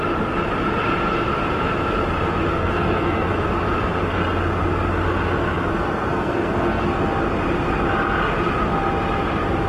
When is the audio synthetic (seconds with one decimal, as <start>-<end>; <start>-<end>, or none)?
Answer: 2.5-3.3; 5.7-7.0